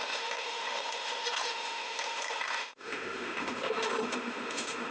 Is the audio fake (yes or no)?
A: yes